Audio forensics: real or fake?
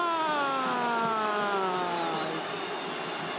real